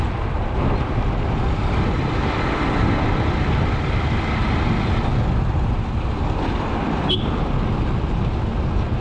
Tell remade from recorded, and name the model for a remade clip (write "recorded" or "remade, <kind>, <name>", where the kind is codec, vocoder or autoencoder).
recorded